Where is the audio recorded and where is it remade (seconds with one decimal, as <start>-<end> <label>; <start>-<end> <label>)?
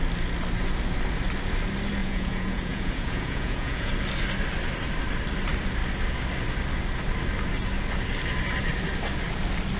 0.0-2.0 recorded; 2.0-3.9 remade; 3.9-9.8 recorded